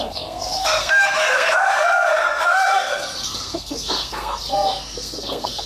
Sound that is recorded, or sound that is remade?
remade